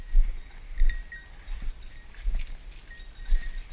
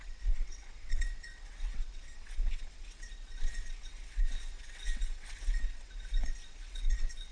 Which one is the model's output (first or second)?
second